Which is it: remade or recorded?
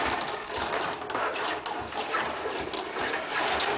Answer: recorded